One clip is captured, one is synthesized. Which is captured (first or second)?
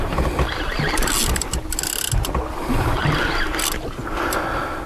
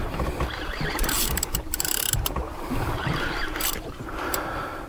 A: first